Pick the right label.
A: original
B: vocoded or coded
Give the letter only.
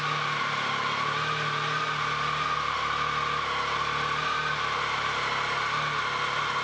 A